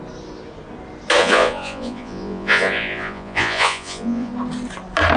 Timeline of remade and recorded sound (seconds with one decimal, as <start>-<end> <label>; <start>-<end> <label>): 0.0-1.2 recorded; 1.2-4.3 remade; 4.3-5.2 recorded